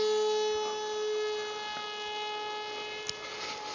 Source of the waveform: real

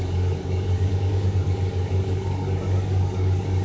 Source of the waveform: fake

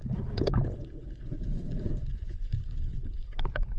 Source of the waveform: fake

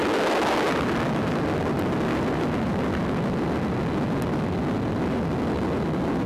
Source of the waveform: real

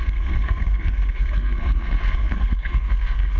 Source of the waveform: fake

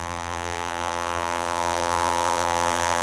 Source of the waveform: fake